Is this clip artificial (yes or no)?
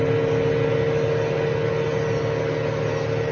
no